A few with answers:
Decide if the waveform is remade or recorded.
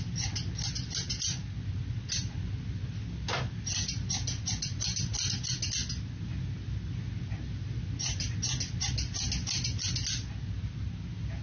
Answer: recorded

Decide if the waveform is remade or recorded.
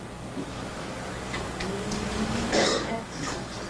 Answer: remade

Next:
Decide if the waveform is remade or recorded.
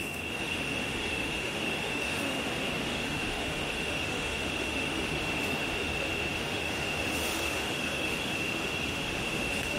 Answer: remade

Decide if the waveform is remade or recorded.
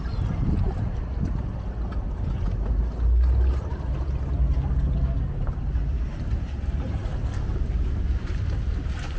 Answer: recorded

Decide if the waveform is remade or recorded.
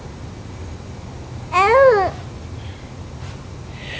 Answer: recorded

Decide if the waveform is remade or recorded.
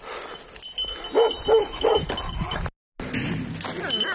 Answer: recorded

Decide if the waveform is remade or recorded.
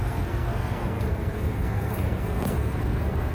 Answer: remade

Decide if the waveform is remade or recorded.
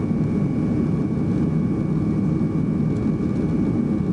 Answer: recorded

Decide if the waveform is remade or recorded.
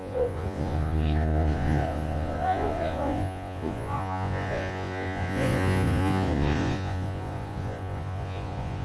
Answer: remade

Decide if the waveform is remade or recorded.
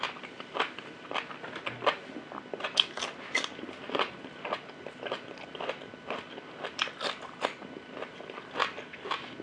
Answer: recorded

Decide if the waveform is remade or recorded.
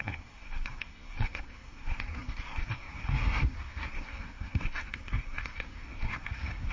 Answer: remade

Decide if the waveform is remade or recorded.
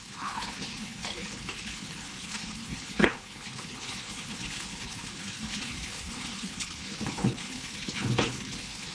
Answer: remade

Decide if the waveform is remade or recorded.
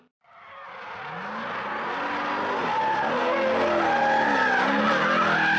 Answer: recorded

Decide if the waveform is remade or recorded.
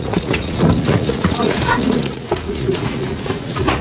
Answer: remade